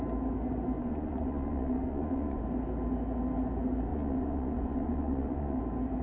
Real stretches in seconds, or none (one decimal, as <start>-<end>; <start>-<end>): 0.0-0.8; 2.4-3.9; 5.6-6.0